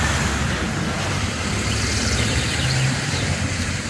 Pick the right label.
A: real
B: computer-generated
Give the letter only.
B